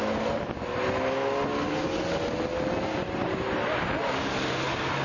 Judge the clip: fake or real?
real